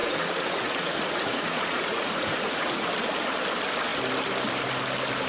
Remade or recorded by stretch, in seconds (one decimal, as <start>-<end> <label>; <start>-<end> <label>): 0.0-2.9 remade; 2.9-5.3 recorded